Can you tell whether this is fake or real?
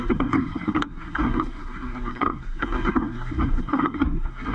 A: fake